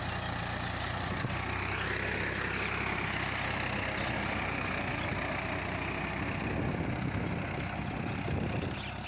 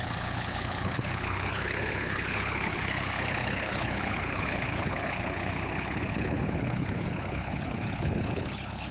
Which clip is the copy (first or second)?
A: second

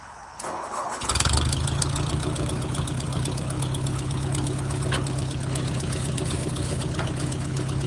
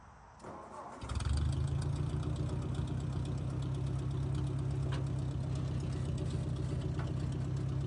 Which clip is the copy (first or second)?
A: first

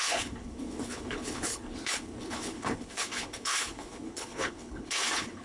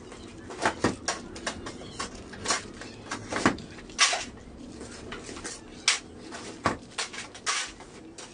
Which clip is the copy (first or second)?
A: first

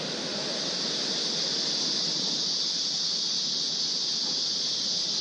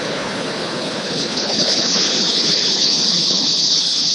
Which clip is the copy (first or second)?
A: second